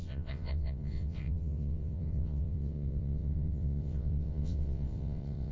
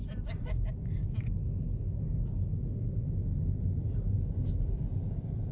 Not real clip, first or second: first